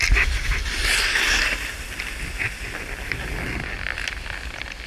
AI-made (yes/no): no